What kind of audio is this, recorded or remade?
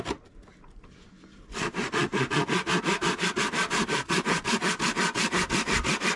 recorded